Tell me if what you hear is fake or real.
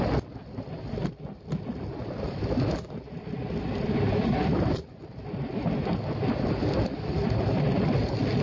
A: real